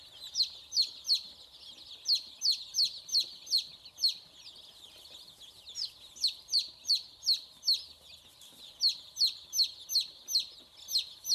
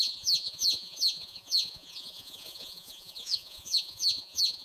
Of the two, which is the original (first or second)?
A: first